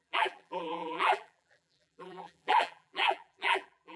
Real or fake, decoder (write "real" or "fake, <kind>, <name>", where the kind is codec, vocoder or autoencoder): fake, vocoder, BigVGAN v2